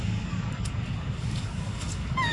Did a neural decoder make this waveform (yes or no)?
yes